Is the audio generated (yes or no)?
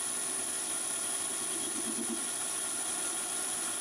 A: no